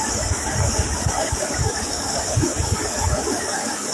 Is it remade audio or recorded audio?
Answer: remade